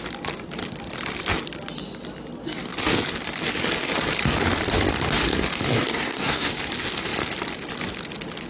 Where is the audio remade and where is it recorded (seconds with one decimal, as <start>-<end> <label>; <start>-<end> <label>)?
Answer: 0.0-5.8 recorded; 5.8-6.5 remade; 6.5-8.5 recorded